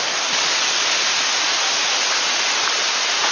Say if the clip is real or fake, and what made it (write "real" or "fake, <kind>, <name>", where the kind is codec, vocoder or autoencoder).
real